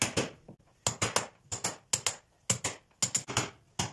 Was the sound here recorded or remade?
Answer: recorded